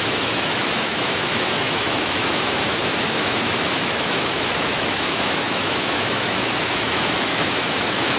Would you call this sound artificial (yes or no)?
yes